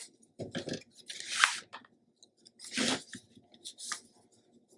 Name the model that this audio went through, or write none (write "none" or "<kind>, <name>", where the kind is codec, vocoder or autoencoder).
none